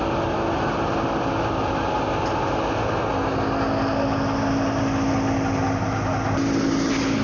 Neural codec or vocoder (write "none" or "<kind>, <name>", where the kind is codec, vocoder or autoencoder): none